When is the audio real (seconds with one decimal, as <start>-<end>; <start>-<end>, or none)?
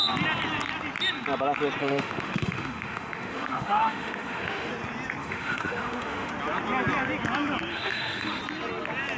0.0-1.8; 4.7-5.2; 6.3-7.7; 8.4-9.2